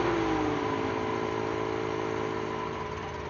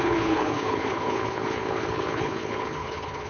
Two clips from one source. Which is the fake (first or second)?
second